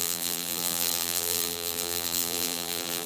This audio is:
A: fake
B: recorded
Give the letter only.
A